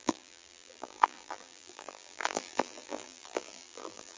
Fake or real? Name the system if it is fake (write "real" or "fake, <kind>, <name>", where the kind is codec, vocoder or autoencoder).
fake, vocoder, BigVGAN v2